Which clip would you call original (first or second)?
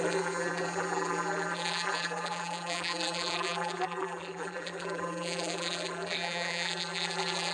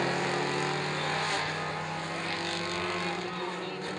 second